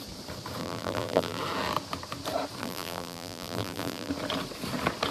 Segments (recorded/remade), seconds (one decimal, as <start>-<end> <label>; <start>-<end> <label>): 0.0-0.6 recorded; 0.6-1.4 remade; 1.4-2.6 recorded; 2.6-4.1 remade; 4.1-5.1 recorded